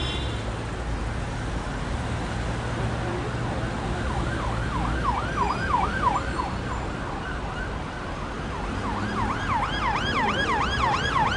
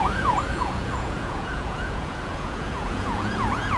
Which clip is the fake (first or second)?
second